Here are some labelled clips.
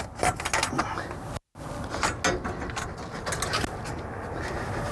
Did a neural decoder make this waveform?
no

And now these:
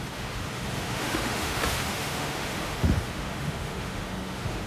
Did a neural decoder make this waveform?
yes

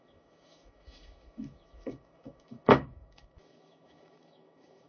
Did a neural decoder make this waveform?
yes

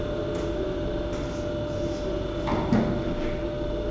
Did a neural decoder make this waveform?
no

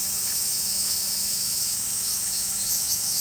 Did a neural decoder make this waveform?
yes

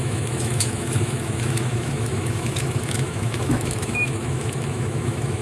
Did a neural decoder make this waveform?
yes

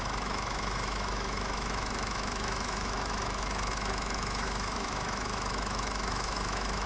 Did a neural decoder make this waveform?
yes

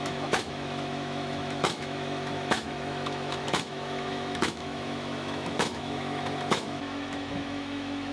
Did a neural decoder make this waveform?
yes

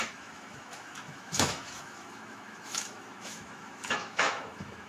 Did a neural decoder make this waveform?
yes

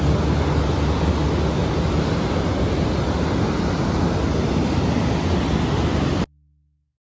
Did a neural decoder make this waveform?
no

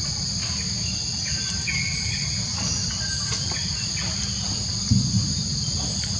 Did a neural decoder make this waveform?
no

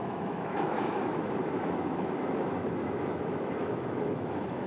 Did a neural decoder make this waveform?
yes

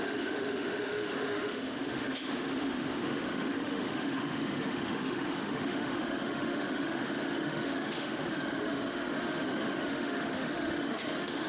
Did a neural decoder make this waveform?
yes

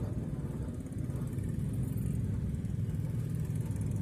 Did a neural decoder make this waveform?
no